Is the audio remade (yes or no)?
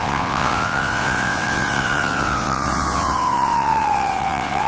yes